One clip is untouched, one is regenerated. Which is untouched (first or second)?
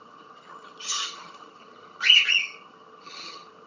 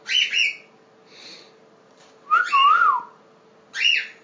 second